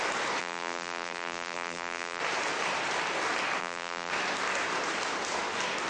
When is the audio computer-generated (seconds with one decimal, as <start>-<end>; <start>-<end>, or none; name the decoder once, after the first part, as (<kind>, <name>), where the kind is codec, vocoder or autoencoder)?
0.4-2.2 (vocoder, BigVGAN v2); 3.6-4.1